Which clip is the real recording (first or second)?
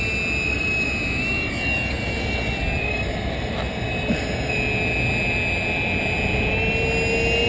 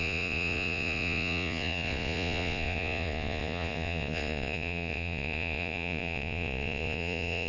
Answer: first